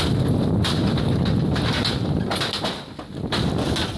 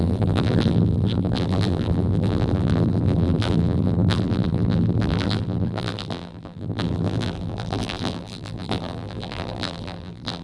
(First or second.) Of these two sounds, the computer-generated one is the second